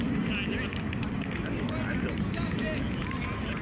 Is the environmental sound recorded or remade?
recorded